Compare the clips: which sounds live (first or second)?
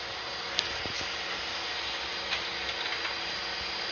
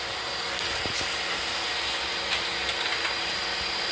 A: second